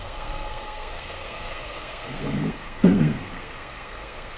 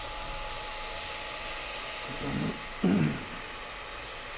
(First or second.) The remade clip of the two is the first